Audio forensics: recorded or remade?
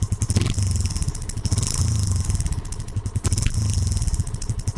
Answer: recorded